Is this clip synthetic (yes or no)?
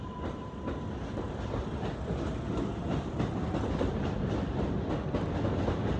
no